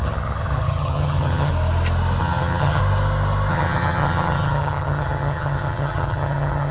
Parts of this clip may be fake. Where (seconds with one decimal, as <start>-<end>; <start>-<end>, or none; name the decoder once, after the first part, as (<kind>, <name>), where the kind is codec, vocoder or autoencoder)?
0.0-1.5 (vocoder, HiFi-GAN); 2.2-2.8; 3.5-6.7